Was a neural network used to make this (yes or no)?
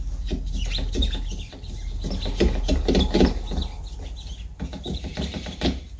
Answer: no